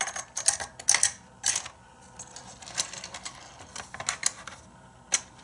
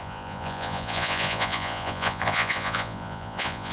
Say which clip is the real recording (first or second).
first